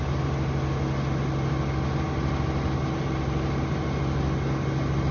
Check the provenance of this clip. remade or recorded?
recorded